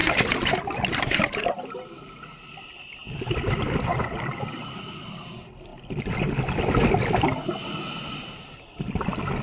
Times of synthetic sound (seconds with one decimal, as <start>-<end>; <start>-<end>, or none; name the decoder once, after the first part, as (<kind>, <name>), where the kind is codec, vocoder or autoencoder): 0.0-2.7 (vocoder, BigVGAN v2); 3.9-5.1